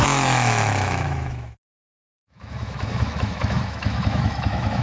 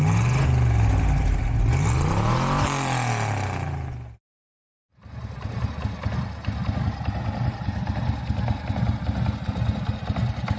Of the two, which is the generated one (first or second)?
first